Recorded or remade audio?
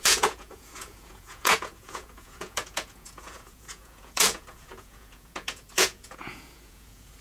remade